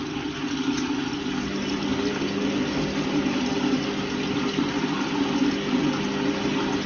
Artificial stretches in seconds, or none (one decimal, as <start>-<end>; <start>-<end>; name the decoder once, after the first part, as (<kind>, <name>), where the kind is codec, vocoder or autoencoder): none